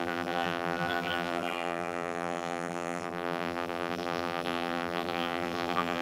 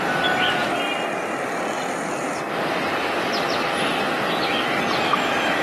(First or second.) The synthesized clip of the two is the first